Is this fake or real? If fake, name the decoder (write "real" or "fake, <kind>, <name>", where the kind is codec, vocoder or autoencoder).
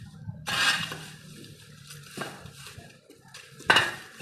fake, vocoder, BigVGAN v2